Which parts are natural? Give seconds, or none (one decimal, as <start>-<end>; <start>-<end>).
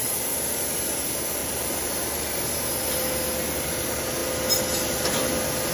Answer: 0.0-1.4; 2.0-5.7